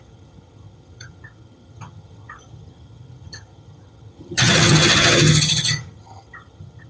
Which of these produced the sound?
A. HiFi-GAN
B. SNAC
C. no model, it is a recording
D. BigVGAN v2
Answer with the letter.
A